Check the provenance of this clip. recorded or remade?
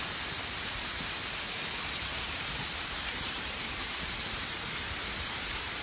remade